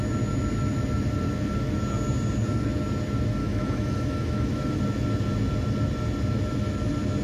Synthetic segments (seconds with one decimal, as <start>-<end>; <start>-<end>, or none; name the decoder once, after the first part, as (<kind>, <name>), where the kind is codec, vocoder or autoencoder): 3.4-4.8 (autoencoder, DAC-VAE)